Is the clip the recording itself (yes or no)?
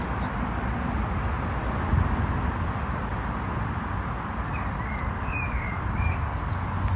yes